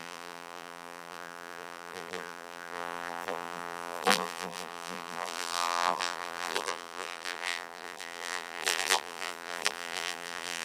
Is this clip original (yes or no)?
no